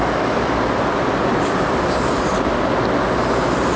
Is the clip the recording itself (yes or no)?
yes